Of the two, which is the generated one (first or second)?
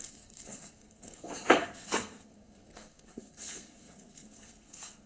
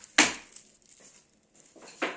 first